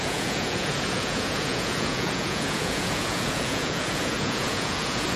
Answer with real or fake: fake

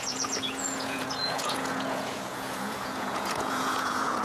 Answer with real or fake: fake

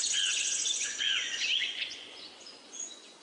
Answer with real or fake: fake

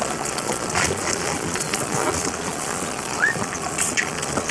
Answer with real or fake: fake